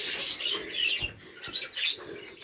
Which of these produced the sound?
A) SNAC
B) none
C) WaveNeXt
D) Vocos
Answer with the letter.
B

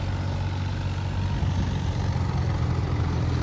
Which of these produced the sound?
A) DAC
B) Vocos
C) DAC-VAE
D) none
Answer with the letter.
D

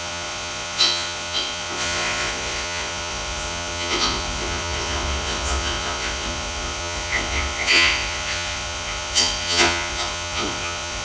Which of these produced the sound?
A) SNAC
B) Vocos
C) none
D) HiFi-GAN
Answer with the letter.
B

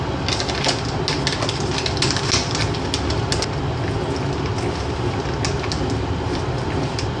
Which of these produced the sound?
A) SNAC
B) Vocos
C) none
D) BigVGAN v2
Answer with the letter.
C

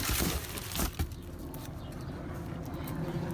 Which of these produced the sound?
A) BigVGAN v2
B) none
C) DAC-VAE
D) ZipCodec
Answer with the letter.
B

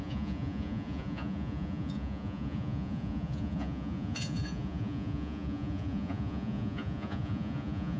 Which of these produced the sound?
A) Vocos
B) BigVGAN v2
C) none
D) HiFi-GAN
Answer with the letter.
A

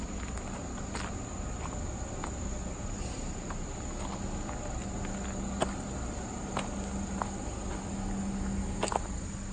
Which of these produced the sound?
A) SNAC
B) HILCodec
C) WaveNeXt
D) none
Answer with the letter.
D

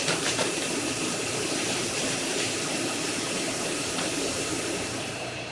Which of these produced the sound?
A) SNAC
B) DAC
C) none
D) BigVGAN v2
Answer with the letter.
D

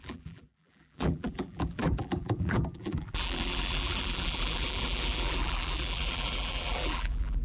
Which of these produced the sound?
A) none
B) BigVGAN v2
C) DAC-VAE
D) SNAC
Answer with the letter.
B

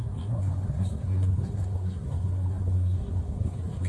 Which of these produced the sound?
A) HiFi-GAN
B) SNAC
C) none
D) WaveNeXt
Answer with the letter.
B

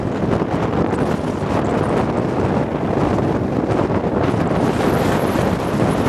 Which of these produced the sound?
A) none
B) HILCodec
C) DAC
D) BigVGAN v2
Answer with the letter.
A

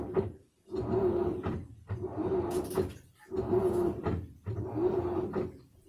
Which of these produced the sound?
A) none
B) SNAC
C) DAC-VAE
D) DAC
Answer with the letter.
A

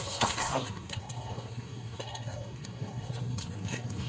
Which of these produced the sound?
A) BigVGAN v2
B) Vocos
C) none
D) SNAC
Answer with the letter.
D